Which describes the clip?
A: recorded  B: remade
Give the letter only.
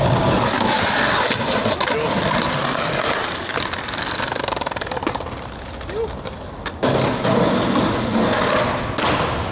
A